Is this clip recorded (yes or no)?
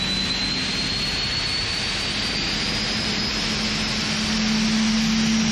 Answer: yes